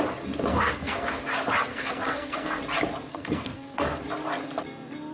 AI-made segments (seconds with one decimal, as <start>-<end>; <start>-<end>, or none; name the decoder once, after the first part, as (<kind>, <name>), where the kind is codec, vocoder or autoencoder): 0.5-1.2 (codec, SNAC); 1.7-2.6; 3.1-4.0